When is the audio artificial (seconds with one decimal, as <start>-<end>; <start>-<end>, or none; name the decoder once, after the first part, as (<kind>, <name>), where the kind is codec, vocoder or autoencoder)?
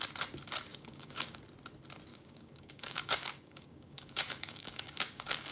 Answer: 0.7-1.4 (codec, DAC); 2.1-5.5